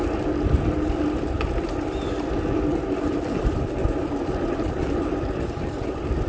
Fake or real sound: real